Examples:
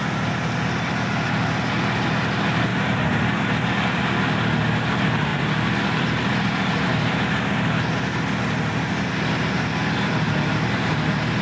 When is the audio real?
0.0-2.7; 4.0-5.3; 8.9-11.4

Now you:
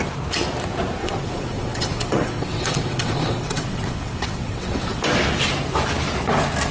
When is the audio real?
0.0-1.0; 5.0-6.7

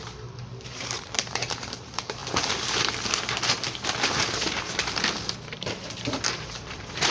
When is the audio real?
2.2-6.5

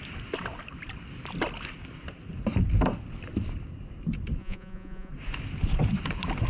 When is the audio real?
0.0-4.4; 5.1-6.5

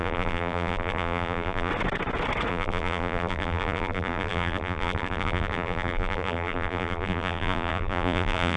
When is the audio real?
1.7-2.5